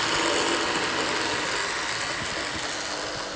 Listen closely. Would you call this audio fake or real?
real